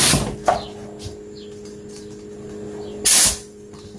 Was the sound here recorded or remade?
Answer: recorded